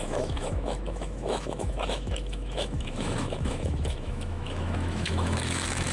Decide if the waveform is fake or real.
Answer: fake